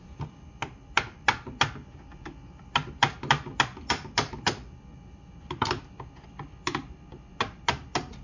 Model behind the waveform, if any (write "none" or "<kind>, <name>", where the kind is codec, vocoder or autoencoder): none